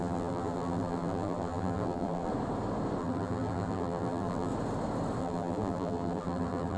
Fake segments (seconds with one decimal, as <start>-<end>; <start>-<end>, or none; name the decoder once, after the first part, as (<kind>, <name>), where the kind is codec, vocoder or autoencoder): 0.0-2.3 (vocoder, BigVGAN v2); 3.0-4.5; 5.2-6.8